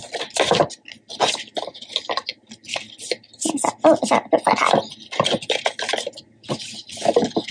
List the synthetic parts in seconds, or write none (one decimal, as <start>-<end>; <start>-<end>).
none

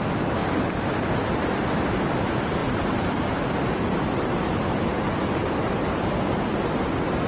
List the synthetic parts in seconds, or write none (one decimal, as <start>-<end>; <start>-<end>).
2.6-6.3

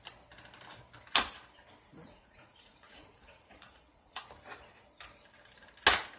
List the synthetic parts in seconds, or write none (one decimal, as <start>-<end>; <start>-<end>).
1.9-4.2

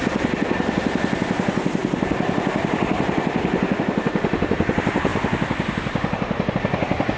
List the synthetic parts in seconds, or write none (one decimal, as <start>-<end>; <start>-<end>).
none

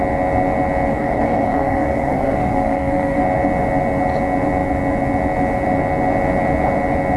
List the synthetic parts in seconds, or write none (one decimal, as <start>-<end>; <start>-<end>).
0.9-3.2

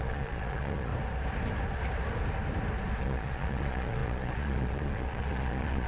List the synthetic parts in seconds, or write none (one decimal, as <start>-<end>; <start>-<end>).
0.0-0.9; 3.0-5.9